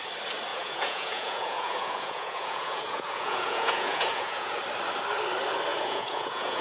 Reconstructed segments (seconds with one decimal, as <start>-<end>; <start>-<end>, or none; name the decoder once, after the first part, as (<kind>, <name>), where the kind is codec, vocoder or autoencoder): 0.5-4.5 (vocoder, Vocos); 5.7-6.6

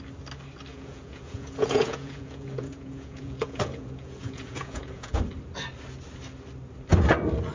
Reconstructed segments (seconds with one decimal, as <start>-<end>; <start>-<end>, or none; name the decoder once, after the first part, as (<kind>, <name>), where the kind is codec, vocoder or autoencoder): 0.7-5.2 (vocoder, Vocos)

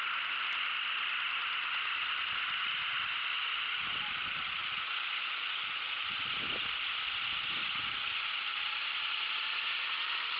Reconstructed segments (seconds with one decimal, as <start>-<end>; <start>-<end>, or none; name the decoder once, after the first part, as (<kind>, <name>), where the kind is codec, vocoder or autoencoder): 4.6-6.3 (vocoder, Vocos); 7.6-8.7